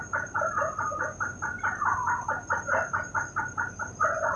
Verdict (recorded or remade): recorded